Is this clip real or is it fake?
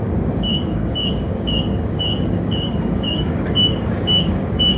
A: fake